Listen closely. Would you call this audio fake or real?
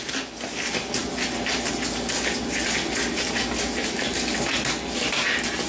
real